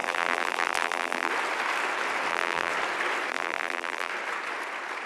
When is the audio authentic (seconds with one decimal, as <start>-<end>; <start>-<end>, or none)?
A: 1.3-2.3; 2.7-3.3; 4.1-5.1